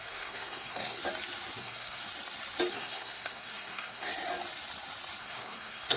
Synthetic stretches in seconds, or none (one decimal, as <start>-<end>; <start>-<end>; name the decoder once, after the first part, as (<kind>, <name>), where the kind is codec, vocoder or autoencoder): 0.0-1.0 (codec, SNAC); 1.6-2.0; 2.7-4.1; 5.2-6.0